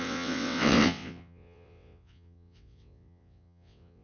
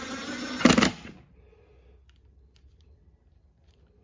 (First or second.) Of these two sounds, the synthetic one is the first